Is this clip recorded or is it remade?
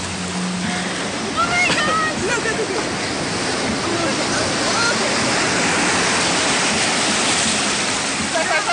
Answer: recorded